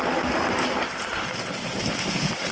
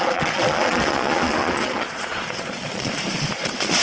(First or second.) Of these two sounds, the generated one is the second